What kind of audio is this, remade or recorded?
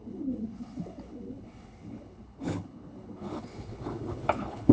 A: remade